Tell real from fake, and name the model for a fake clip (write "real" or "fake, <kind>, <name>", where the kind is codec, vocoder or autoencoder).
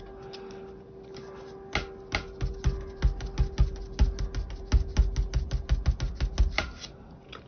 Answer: real